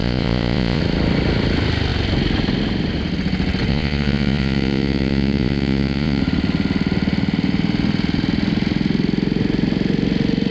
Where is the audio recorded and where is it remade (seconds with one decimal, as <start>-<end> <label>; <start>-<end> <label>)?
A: 0.0-0.8 remade; 0.8-3.7 recorded; 3.7-6.2 remade; 6.2-10.5 recorded